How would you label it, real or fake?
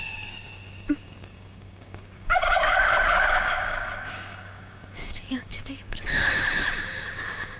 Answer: fake